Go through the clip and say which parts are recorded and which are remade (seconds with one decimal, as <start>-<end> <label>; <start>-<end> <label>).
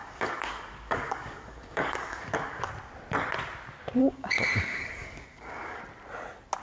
0.0-2.7 remade; 2.7-4.0 recorded; 4.0-5.8 remade; 5.8-6.6 recorded